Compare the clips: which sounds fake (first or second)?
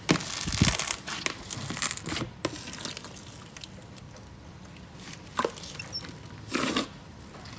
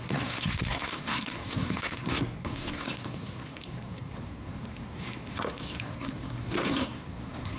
second